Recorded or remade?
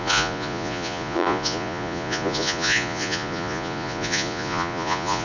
remade